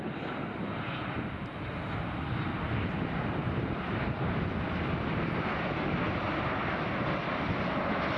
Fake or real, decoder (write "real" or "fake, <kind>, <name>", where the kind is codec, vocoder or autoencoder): real